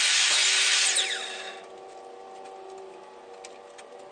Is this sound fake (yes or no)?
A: no